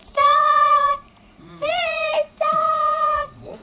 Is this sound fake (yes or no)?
yes